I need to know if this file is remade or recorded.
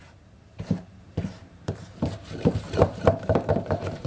remade